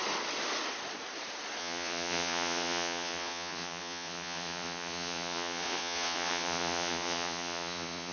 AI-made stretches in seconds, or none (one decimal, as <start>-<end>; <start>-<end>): 1.6-8.1